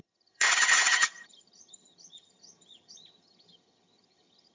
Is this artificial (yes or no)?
yes